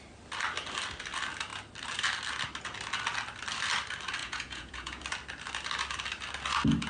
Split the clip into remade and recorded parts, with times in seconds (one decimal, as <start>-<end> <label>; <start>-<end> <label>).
0.0-4.2 recorded; 4.2-5.0 remade; 5.0-6.9 recorded